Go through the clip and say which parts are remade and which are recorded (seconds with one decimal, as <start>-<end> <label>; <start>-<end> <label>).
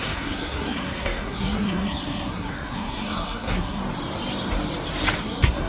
0.0-3.8 remade; 3.8-5.2 recorded; 5.2-5.7 remade